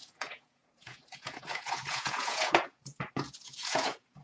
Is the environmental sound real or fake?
fake